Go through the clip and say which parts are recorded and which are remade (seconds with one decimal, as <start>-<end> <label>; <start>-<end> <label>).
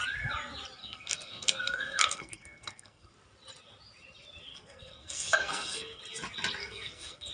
0.0-0.8 recorded; 0.8-3.1 remade; 3.1-4.5 recorded; 4.5-6.0 remade; 6.0-6.6 recorded; 6.6-7.3 remade